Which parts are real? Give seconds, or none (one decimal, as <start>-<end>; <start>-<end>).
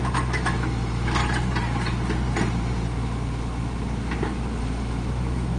1.2-4.6